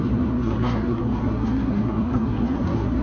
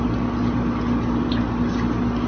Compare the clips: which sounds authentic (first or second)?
second